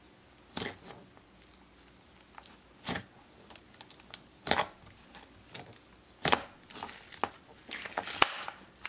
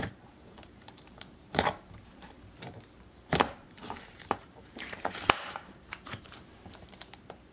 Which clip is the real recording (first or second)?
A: first